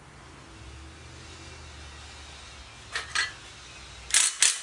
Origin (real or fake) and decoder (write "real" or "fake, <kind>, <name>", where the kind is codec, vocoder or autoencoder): real